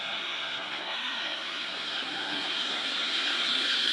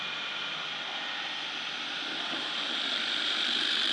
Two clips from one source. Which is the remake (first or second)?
first